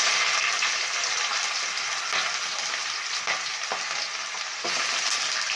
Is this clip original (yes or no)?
yes